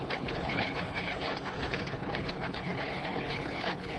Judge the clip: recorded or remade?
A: remade